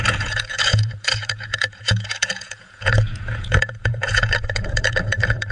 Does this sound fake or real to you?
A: fake